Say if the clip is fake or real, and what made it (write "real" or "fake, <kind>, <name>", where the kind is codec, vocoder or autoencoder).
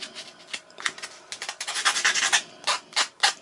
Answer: real